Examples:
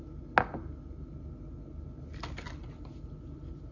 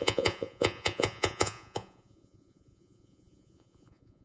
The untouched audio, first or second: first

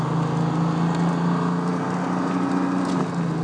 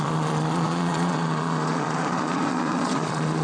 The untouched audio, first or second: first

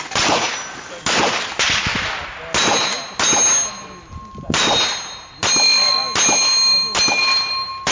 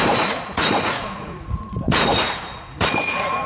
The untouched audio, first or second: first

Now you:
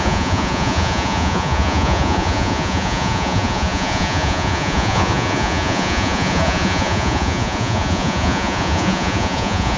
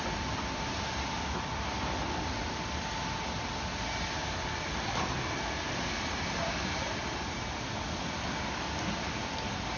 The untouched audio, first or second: second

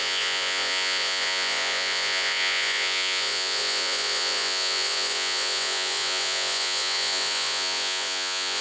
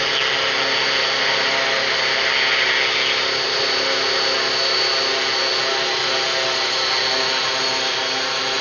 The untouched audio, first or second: second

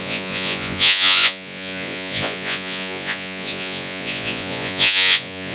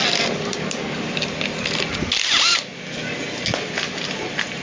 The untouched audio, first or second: second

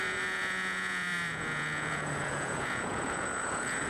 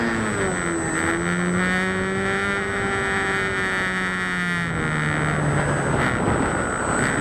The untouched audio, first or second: second